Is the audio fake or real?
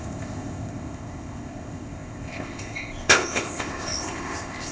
fake